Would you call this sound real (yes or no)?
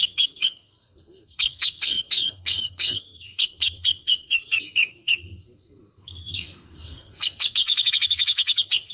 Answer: no